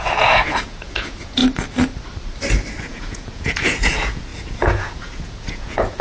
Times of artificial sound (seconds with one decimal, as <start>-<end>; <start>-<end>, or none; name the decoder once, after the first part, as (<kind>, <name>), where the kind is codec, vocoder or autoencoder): 0.0-1.4 (vocoder, Vocos); 2.9-6.0